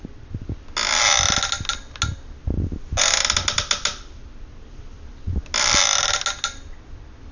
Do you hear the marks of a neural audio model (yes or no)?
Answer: no